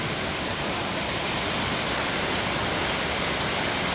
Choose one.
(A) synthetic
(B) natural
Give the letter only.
B